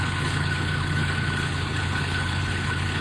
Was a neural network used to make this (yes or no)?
yes